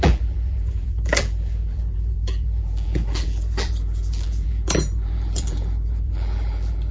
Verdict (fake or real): fake